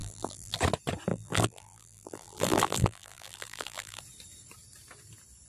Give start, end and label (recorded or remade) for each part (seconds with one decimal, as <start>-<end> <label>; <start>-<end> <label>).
0.0-0.6 remade; 0.6-1.1 recorded; 1.1-4.0 remade; 4.0-5.5 recorded